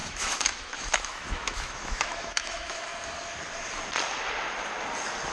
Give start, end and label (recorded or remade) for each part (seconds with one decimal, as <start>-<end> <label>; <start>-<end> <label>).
0.0-2.9 remade; 2.9-5.3 recorded